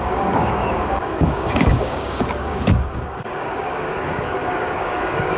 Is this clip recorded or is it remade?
remade